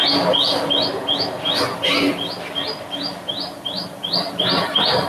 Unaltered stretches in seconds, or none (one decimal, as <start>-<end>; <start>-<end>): 0.0-5.1